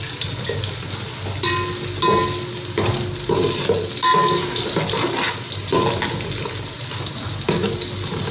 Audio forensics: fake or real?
real